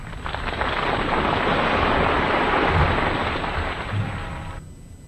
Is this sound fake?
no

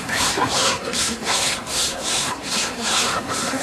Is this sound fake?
yes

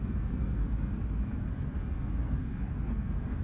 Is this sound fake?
yes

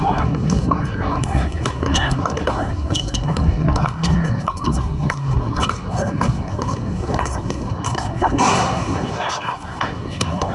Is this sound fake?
yes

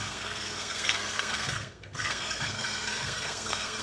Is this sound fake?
yes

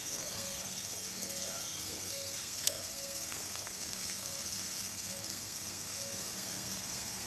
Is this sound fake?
yes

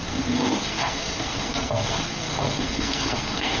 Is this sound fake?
yes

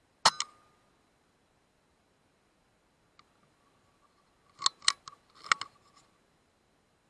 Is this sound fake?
no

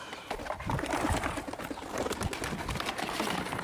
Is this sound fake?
no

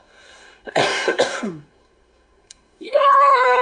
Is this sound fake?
yes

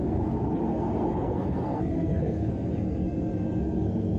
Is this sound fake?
yes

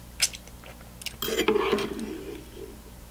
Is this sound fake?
no